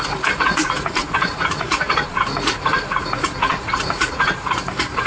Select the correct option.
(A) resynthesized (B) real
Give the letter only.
A